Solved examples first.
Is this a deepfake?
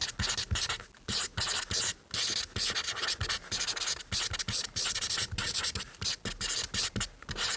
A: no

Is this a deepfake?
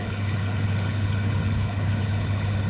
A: yes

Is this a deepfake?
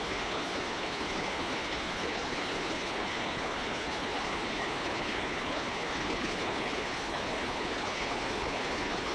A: yes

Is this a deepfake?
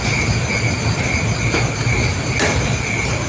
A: no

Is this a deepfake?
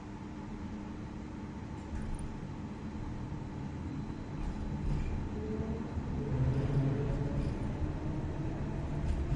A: no